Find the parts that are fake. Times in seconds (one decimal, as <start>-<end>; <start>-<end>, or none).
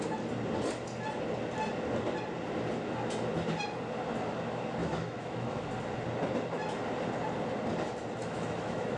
4.8-5.6; 8.2-9.0